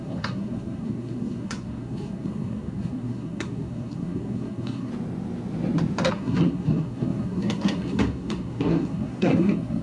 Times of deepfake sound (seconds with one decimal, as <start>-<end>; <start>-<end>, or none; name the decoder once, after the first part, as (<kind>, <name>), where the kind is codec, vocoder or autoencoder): 0.0-4.9 (codec, SNAC); 6.1-9.8